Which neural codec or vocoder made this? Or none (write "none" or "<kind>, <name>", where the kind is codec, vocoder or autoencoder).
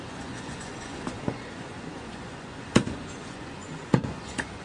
vocoder, Vocos